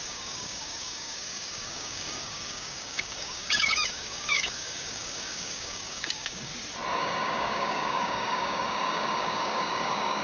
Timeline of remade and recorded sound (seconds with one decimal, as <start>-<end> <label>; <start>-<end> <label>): 0.0-6.5 remade; 6.5-7.0 recorded; 7.0-10.2 remade